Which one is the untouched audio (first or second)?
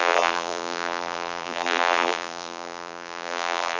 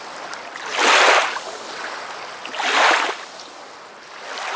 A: second